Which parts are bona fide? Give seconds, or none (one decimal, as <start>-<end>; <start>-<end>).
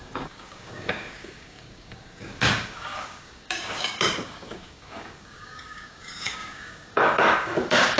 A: none